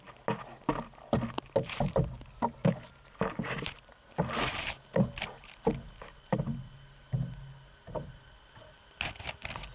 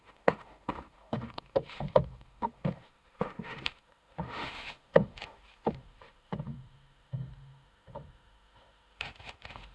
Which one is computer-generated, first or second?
second